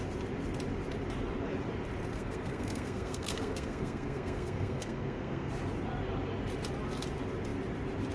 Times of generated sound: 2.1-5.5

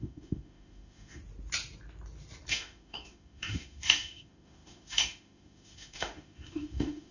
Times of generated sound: 0.0-1.2; 2.5-7.1

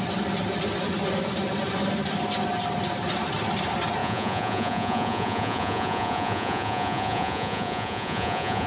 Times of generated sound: 4.0-8.7